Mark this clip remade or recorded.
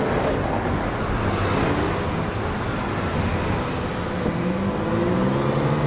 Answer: recorded